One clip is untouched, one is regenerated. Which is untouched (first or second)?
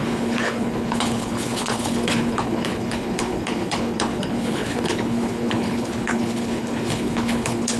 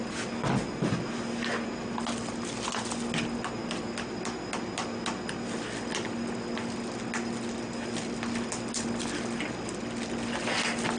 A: second